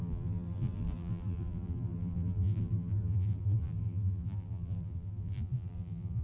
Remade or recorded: remade